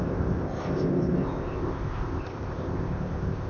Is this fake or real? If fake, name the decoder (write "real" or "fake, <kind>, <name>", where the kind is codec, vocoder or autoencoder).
fake, codec, ZipCodec